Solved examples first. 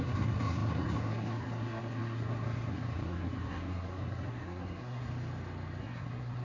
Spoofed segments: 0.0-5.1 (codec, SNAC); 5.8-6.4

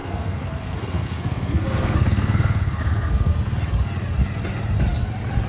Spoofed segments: 0.0-3.3 (codec, SNAC)

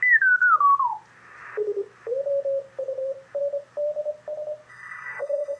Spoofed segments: 4.7-5.6 (codec, SNAC)

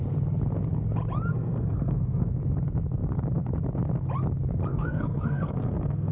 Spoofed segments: 1.3-2.3 (codec, SNAC); 4.7-6.1

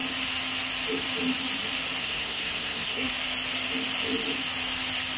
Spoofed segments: 2.0-3.1 (codec, SNAC)

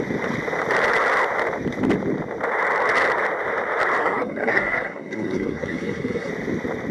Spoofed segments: 4.0-6.3 (codec, SNAC)

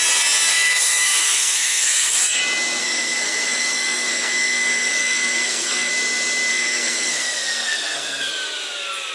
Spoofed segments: 0.5-2.4 (codec, SNAC); 2.8-5.9; 6.5-8.3